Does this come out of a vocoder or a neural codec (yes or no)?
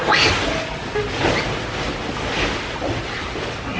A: no